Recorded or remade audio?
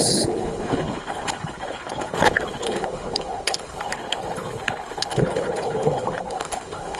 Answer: remade